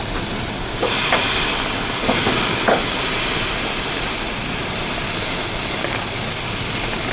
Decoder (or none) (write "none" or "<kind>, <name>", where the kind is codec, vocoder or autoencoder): none